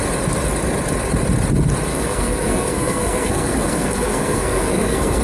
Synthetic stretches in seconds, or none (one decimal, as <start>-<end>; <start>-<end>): 1.9-5.2